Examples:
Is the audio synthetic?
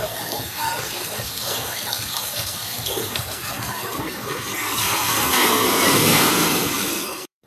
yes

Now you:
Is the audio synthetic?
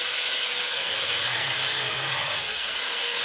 yes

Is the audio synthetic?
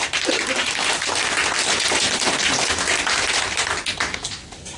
no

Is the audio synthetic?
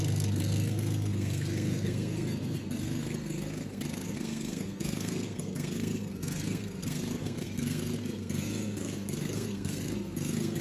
yes